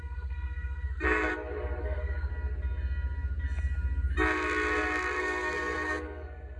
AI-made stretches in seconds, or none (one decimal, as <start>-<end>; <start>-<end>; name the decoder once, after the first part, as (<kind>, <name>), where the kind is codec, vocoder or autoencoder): 0.0-1.3 (codec, SNAC); 1.8-2.3; 5.2-6.6